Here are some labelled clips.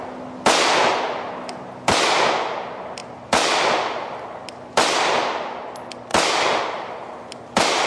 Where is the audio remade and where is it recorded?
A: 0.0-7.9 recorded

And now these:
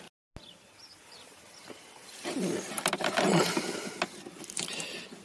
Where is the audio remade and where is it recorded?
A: 0.0-1.6 recorded; 1.6-3.4 remade; 3.4-5.2 recorded

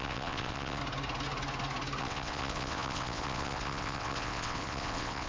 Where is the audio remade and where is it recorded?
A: 0.0-0.8 remade; 0.8-2.0 recorded; 2.0-5.3 remade

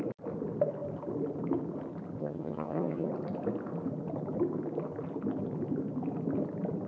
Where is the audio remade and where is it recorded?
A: 0.0-2.2 recorded; 2.2-3.1 remade; 3.1-6.9 recorded

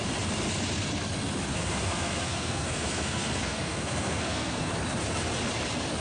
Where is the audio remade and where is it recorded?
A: 0.0-1.5 recorded; 1.5-4.7 remade; 4.7-6.0 recorded